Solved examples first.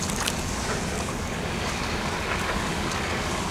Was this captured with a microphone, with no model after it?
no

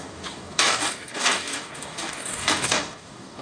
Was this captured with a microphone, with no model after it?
no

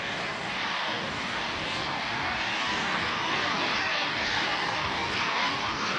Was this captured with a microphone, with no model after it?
no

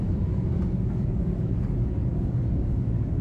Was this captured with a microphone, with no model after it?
no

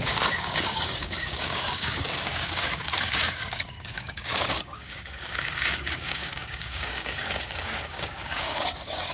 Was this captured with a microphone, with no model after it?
no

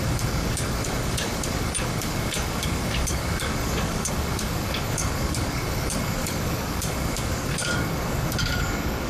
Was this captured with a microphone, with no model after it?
no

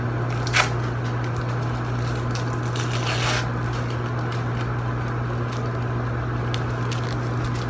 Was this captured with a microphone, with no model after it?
yes